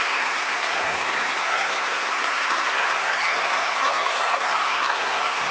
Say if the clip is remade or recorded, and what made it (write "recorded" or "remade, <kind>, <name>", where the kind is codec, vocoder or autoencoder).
remade, codec, SNAC